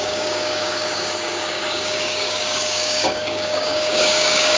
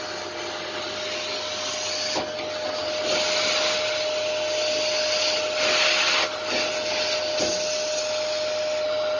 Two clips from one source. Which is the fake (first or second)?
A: first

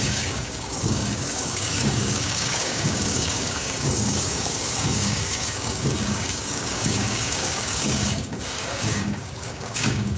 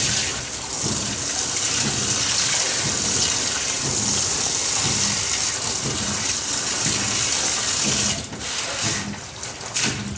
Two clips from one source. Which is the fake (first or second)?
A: first